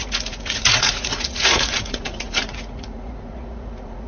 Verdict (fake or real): fake